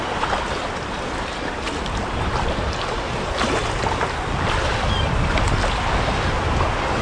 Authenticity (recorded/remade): recorded